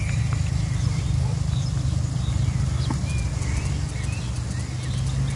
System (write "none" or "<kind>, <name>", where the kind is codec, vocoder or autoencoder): none